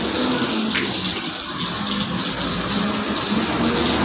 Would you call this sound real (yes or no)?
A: yes